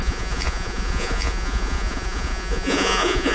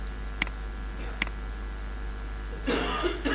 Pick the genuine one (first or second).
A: second